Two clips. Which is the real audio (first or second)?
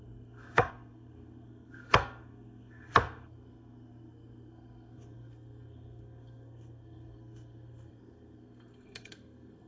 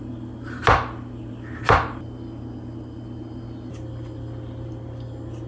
second